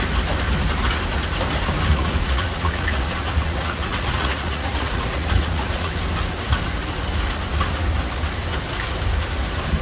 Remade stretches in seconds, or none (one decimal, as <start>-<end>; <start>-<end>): 1.9-5.9